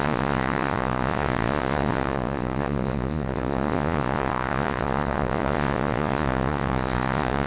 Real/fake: fake